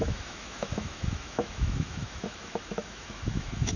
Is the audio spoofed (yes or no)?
yes